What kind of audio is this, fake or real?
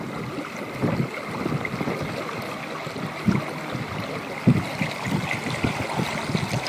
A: real